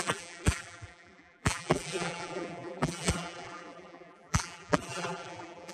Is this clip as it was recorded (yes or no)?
no